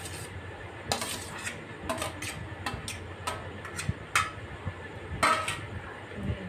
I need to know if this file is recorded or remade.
recorded